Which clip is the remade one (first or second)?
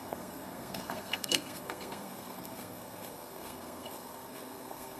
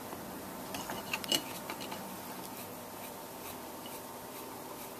first